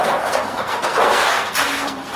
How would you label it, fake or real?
fake